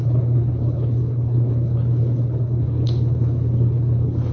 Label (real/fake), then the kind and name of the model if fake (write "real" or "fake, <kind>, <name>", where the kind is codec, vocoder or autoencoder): fake, codec, HILCodec